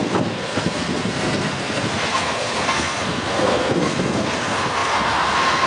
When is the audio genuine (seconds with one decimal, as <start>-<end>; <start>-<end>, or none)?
none